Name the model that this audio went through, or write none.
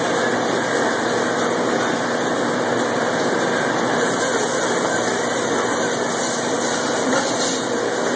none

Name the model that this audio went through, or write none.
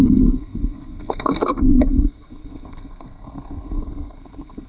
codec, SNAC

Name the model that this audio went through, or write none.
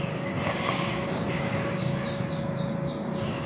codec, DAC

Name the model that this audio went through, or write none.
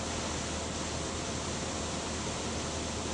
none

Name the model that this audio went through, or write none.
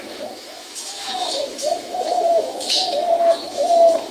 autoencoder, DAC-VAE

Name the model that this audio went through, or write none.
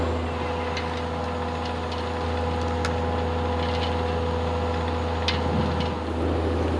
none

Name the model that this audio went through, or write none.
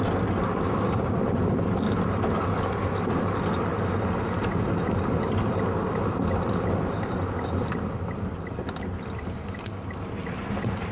none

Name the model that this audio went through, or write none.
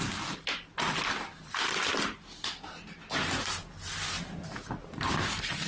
none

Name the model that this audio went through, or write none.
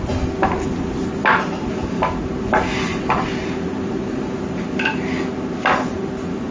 none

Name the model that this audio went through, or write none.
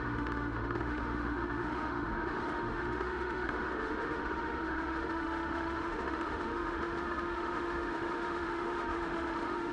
autoencoder, DAC-VAE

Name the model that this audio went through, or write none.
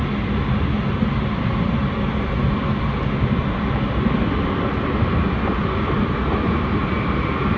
none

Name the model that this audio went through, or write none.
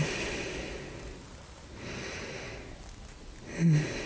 none